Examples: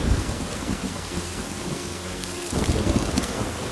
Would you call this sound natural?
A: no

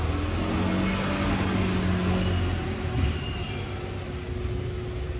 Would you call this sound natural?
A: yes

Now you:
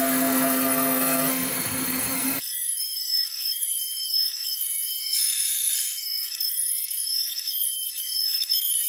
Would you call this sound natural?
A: no